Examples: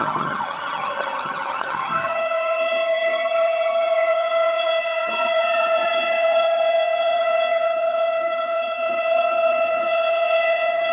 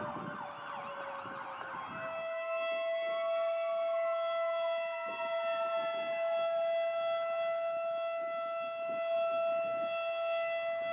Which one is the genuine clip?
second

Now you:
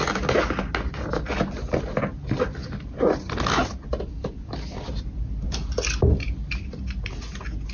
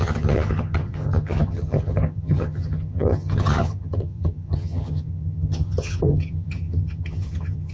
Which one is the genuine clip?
first